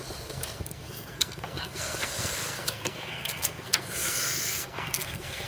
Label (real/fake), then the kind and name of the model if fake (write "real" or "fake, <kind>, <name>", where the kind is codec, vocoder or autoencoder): fake, codec, SNAC